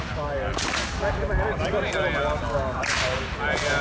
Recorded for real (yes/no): yes